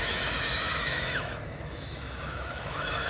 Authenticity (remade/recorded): remade